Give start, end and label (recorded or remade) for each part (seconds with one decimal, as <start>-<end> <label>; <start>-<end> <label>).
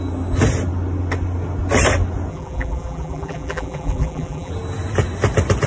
0.0-2.3 recorded; 2.3-4.5 remade; 4.5-5.7 recorded